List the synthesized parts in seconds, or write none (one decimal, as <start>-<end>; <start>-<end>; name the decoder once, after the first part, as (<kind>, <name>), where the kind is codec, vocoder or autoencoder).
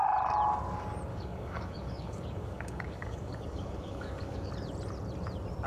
1.1-4.5 (codec, DAC)